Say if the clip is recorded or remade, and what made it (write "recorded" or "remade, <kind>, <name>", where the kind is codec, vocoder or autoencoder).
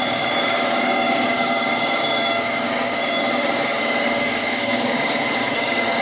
remade, codec, DAC